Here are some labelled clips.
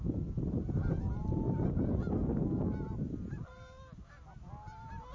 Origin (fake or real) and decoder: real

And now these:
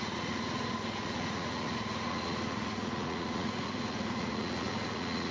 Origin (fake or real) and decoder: fake, vocoder, Vocos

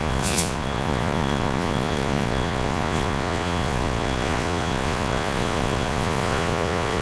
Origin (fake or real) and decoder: fake, vocoder, Vocos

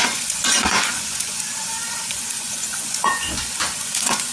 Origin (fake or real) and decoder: fake, vocoder, Vocos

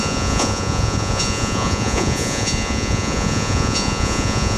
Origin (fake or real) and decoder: fake, vocoder, Vocos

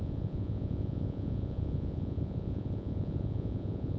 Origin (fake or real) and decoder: fake, vocoder, Vocos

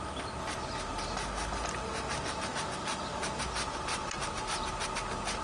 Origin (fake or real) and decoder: real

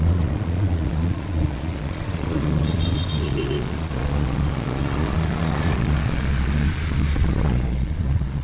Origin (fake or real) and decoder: fake, vocoder, Vocos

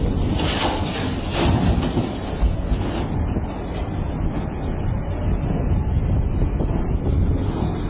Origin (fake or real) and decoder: real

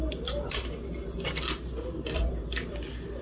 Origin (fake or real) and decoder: real